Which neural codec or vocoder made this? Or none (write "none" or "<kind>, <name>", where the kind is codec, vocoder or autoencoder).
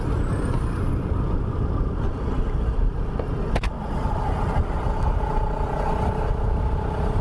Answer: none